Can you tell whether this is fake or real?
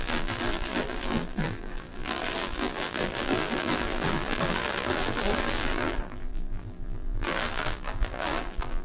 fake